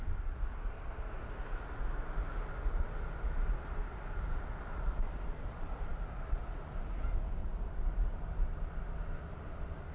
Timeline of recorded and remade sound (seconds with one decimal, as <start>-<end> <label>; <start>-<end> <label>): 0.0-9.9 recorded